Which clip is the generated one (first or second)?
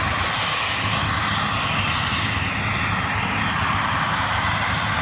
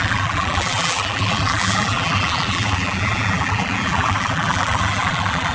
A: second